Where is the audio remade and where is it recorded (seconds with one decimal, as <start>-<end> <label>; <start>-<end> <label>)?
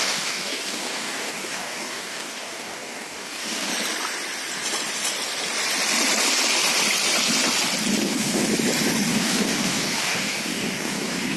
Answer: 0.0-3.7 remade; 3.7-8.0 recorded; 8.0-8.4 remade; 8.4-9.1 recorded; 9.1-11.4 remade